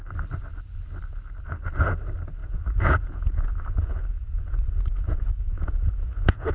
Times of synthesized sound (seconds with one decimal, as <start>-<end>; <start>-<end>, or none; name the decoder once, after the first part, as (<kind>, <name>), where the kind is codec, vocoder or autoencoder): 2.4-6.5 (vocoder, Vocos)